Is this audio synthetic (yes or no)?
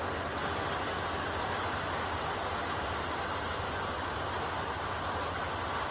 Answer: no